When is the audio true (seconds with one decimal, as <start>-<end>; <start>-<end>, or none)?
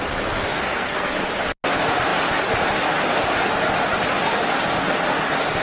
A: 0.0-0.5; 1.3-5.6